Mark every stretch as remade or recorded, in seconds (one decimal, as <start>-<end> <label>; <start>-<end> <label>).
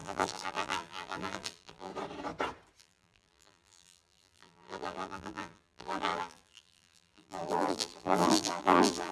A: 0.0-1.9 remade; 1.9-2.8 recorded; 2.8-9.1 remade